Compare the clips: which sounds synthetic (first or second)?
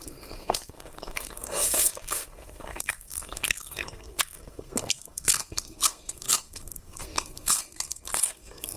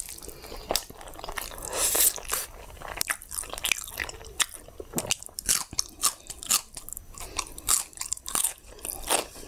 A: first